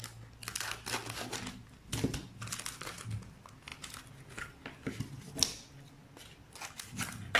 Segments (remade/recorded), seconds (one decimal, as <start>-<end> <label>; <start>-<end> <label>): 0.0-7.4 recorded